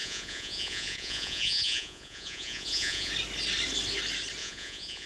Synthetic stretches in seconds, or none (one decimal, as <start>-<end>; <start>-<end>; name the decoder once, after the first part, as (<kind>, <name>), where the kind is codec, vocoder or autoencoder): 0.0-3.1 (vocoder, Vocos); 4.4-5.1